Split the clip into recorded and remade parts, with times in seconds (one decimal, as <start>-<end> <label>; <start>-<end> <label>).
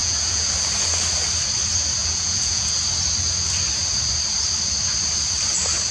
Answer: 0.0-0.5 remade; 0.5-2.0 recorded; 2.0-2.7 remade; 2.7-5.9 recorded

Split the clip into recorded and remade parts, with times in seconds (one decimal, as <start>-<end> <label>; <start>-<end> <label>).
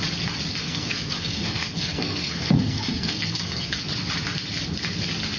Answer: 0.0-0.6 recorded; 0.6-3.8 remade; 3.8-5.4 recorded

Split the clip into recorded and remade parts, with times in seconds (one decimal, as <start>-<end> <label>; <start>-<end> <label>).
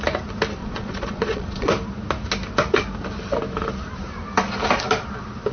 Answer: 0.0-0.6 recorded; 0.6-1.7 remade; 1.7-5.5 recorded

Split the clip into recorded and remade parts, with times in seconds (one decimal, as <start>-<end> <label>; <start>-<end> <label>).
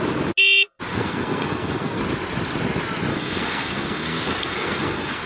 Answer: 0.0-0.9 recorded; 0.9-2.0 remade; 2.0-3.1 recorded; 3.1-5.3 remade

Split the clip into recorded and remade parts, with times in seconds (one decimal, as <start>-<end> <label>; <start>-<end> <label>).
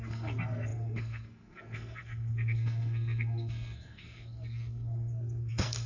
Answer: 0.0-5.9 remade